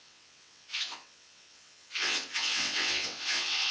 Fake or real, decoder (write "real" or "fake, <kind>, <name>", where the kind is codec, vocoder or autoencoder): fake, vocoder, WaveNeXt